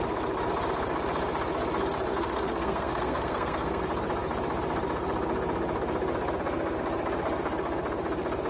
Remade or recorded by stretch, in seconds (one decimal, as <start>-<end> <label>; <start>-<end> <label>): 0.0-2.1 recorded; 2.1-3.8 remade; 3.8-8.5 recorded